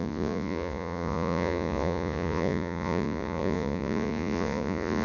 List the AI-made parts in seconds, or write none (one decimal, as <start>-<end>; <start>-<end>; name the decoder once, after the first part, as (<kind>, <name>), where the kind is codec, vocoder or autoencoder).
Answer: 0.0-5.0 (vocoder, Vocos)